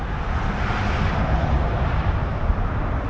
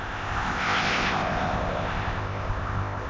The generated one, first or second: second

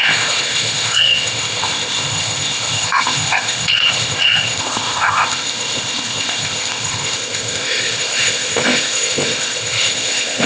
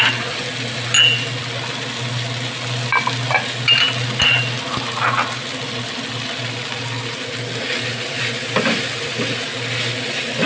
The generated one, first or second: first